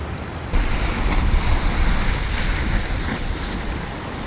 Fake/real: real